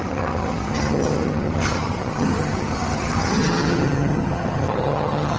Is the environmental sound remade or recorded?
remade